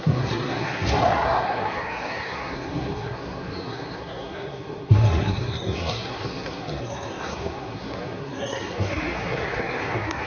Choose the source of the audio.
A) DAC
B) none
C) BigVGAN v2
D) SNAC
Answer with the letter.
D